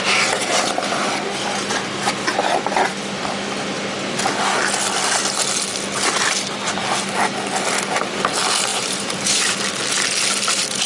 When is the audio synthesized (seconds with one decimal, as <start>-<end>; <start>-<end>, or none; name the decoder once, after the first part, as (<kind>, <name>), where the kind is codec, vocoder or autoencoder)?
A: 8.7-9.6 (vocoder, BigVGAN v2)